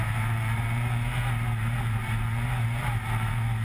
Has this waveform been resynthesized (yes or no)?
yes